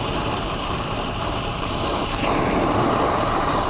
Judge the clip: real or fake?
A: fake